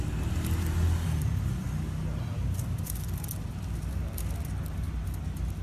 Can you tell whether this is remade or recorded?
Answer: recorded